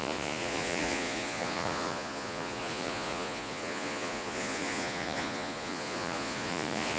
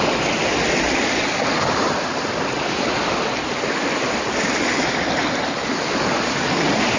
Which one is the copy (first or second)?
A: first